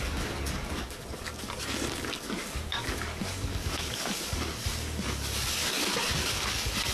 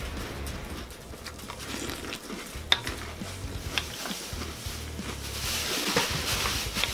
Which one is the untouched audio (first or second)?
second